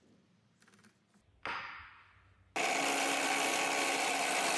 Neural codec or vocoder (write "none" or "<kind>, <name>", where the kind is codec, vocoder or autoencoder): none